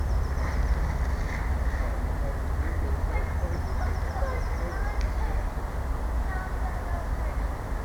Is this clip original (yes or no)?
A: yes